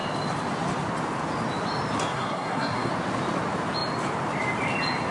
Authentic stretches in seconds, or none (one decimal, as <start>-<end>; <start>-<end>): 0.0-2.1; 2.9-5.1